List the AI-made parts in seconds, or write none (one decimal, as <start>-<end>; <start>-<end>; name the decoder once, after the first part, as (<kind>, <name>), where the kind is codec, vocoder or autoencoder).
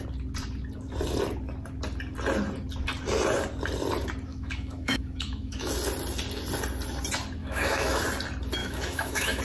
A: 4.3-5.7 (autoencoder, DAC-VAE); 7.4-8.0; 8.6-9.4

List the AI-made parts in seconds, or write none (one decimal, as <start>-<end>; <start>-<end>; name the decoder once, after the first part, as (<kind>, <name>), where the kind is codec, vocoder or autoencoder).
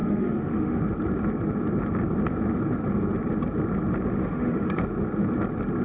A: 0.0-0.8 (autoencoder, DAC-VAE); 4.2-4.7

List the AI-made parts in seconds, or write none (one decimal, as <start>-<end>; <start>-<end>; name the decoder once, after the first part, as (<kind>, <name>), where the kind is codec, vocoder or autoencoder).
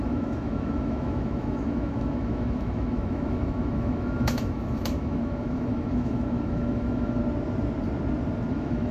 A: 0.0-7.2 (autoencoder, DAC-VAE); 8.5-8.9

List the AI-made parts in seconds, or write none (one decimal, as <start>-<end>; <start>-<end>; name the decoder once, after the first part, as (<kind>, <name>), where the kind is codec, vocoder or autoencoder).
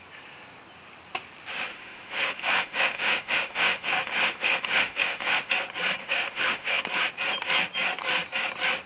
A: 1.7-5.5 (autoencoder, DAC-VAE); 6.0-6.8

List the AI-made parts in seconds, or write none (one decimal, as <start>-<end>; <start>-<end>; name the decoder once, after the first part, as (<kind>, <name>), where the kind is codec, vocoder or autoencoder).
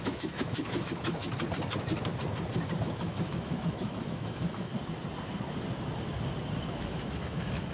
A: 0.0-1.2 (autoencoder, DAC-VAE); 2.8-4.7; 6.6-7.7